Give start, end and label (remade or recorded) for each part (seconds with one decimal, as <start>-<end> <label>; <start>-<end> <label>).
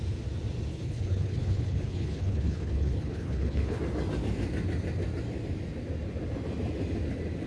0.0-0.7 recorded; 0.7-3.8 remade; 3.8-7.5 recorded